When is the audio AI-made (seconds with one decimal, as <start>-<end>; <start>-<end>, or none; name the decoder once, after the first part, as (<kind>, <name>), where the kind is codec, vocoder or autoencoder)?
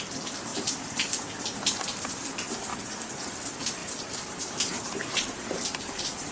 0.5-1.1 (vocoder, BigVGAN v2); 3.8-6.3